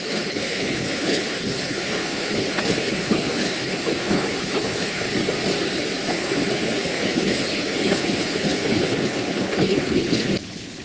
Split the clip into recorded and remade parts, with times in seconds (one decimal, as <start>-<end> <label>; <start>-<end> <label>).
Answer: 0.0-5.1 remade; 5.1-6.1 recorded; 6.1-10.8 remade